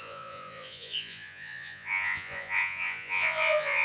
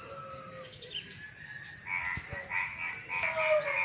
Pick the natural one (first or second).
second